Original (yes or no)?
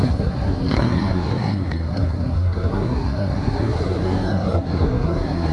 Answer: no